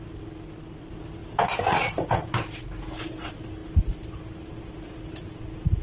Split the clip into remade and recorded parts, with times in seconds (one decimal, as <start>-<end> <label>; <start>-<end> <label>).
0.0-5.8 recorded